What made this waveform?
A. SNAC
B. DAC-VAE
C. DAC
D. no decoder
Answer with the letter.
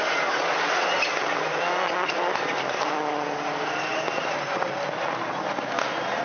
D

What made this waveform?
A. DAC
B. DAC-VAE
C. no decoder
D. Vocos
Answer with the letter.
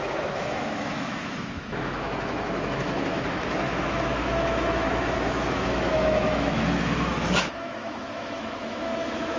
B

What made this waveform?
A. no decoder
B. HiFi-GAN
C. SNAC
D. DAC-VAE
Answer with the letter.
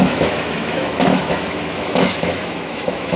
D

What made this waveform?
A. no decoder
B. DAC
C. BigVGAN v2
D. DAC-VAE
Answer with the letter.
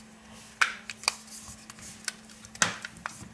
A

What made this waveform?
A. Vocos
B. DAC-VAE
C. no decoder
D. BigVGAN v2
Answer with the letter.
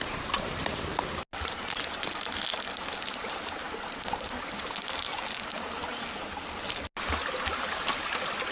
C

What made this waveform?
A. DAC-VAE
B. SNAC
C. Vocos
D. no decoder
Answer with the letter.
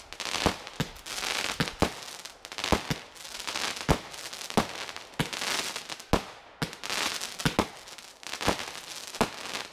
D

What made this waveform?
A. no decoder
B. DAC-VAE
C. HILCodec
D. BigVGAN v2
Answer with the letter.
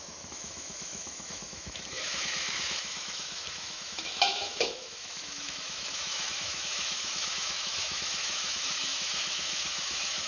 B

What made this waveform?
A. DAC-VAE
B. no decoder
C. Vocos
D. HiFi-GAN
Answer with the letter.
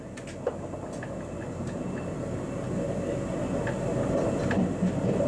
B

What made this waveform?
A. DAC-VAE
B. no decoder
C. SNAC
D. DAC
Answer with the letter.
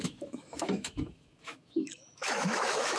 A